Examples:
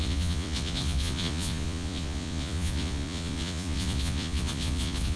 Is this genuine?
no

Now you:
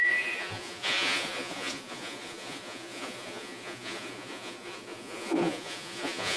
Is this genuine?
no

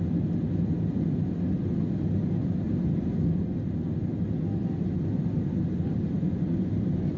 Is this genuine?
yes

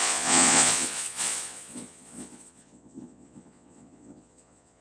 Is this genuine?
no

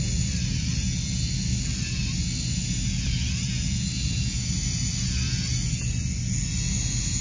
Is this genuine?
yes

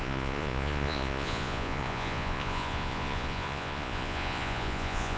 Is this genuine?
no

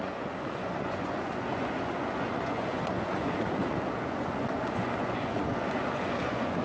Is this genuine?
no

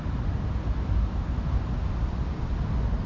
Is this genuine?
yes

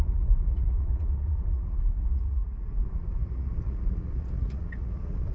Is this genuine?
no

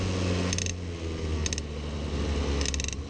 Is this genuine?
yes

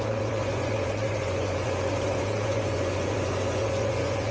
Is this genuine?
no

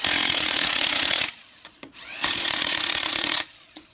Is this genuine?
no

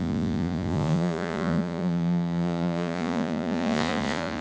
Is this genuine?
no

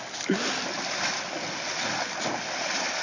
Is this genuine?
yes